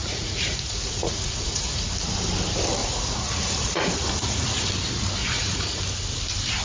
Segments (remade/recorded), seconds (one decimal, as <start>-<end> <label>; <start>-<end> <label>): 0.0-1.9 remade; 1.9-2.8 recorded; 2.8-4.7 remade; 4.7-5.2 recorded; 5.2-5.8 remade; 5.8-6.6 recorded